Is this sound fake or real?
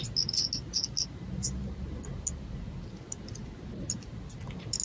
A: real